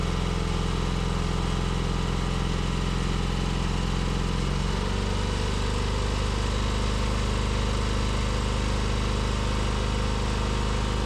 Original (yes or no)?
yes